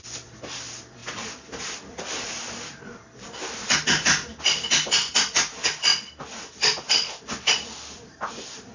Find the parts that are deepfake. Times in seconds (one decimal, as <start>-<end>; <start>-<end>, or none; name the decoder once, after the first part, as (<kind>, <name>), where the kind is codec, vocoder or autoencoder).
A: 0.0-4.3 (vocoder, BigVGAN v2); 5.1-8.7